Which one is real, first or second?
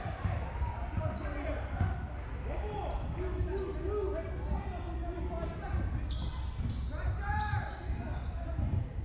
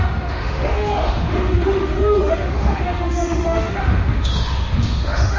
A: first